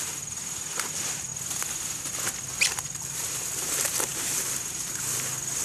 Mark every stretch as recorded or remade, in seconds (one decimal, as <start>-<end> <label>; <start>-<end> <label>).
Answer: 0.0-1.3 remade; 1.3-2.8 recorded; 2.8-5.6 remade